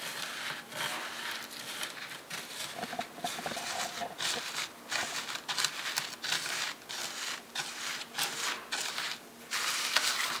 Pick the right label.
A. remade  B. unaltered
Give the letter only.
B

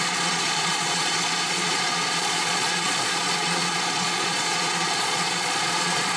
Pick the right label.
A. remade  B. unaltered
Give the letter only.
A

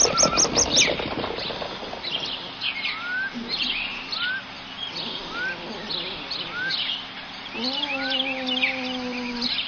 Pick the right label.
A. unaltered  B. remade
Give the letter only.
A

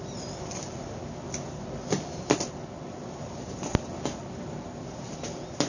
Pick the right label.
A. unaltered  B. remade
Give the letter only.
A